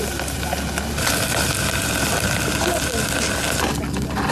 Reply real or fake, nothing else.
real